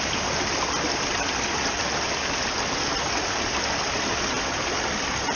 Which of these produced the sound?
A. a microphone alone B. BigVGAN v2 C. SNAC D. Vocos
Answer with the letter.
A